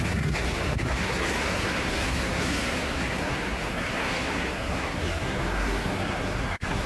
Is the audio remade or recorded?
remade